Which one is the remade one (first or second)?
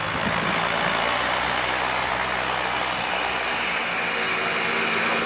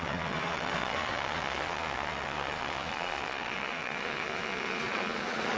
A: second